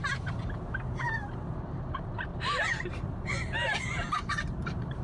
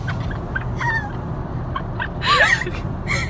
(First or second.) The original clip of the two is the second